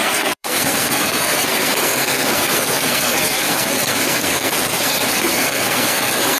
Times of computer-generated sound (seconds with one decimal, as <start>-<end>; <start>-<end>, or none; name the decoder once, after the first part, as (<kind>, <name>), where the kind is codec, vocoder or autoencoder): 0.0-6.4 (codec, SNAC)

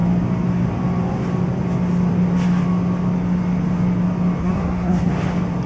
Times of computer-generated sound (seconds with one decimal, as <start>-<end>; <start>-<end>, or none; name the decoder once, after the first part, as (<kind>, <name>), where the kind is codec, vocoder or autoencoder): 4.4-5.1 (codec, SNAC)

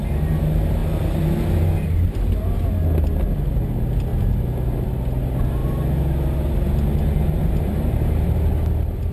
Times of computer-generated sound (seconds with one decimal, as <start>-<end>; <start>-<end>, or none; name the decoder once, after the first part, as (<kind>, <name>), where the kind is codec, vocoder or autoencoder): none

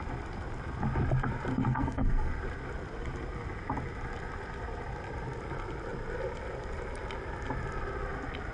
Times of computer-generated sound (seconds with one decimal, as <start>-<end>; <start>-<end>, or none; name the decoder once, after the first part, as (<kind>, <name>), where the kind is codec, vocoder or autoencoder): 1.5-2.3 (codec, SNAC)

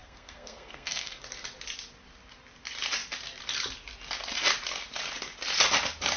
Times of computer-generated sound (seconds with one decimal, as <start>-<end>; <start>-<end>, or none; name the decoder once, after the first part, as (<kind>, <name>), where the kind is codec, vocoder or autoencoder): 0.0-1.2 (codec, SNAC)

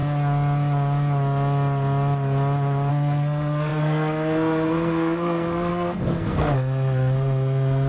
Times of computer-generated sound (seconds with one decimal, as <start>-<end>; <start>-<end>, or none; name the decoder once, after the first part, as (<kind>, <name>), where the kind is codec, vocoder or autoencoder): 2.9-7.9 (codec, SNAC)